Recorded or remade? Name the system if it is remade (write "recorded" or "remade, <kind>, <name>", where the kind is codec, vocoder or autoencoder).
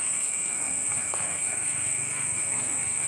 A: remade, codec, SNAC